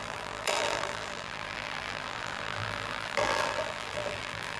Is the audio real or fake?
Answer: fake